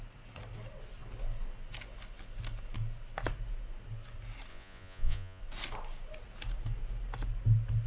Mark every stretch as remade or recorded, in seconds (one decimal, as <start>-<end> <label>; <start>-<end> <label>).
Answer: 0.0-4.5 recorded; 4.5-5.4 remade; 5.4-7.9 recorded